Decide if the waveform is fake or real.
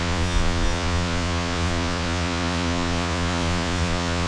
fake